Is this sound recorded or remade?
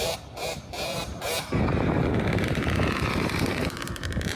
remade